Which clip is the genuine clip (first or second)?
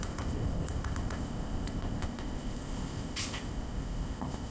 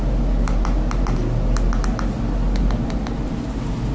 second